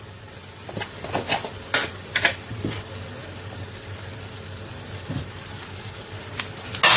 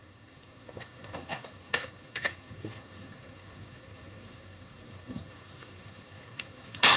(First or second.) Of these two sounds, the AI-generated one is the second